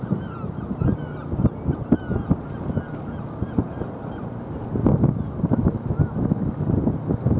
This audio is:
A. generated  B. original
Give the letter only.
B